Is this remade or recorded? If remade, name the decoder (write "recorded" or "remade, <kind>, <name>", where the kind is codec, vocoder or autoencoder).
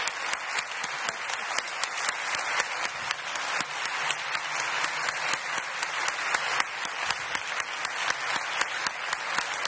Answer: recorded